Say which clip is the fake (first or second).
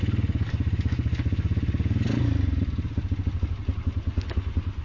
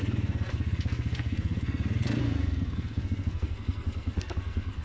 second